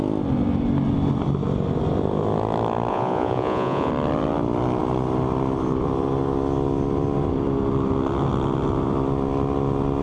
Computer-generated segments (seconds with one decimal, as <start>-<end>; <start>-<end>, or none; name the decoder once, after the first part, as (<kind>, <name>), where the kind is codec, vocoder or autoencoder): 2.9-3.9 (vocoder, Vocos)